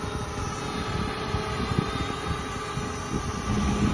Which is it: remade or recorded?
recorded